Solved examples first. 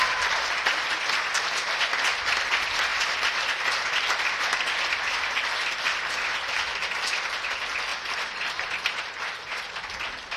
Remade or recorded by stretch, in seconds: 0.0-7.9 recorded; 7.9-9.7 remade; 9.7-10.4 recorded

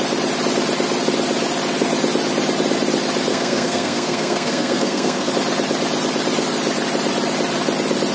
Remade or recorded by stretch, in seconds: 0.0-3.3 recorded; 3.3-5.3 remade; 5.3-8.1 recorded

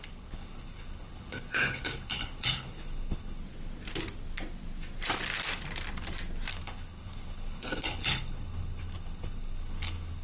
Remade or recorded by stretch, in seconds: 0.0-3.4 remade; 3.4-6.5 recorded; 6.5-10.2 remade

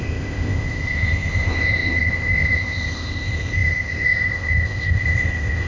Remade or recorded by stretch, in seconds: 0.0-5.7 remade

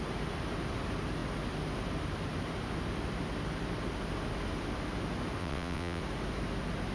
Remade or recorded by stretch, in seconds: 0.0-5.4 recorded; 5.4-6.0 remade; 6.0-6.9 recorded

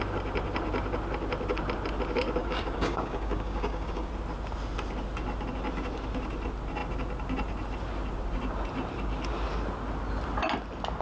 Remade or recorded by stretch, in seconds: 0.0-2.4 recorded; 2.4-4.1 remade; 4.1-11.0 recorded

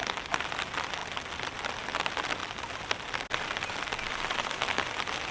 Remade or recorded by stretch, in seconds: 0.0-5.3 recorded